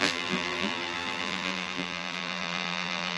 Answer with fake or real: fake